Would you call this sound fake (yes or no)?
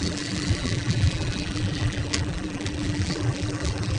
yes